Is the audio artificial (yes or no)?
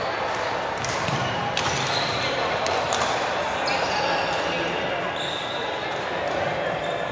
no